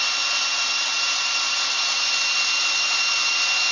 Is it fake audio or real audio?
real